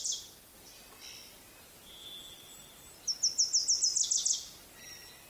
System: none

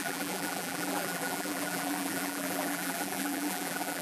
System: vocoder, BigVGAN v2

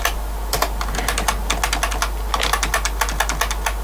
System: vocoder, BigVGAN v2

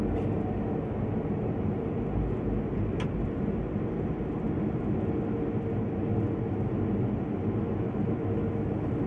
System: none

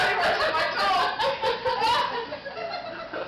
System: none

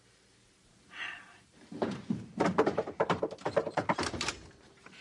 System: vocoder, BigVGAN v2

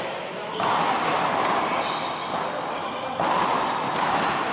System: none